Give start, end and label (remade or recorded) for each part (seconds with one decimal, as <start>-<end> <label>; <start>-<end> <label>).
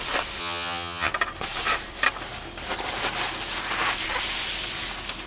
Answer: 0.0-0.4 recorded; 0.4-1.1 remade; 1.1-5.3 recorded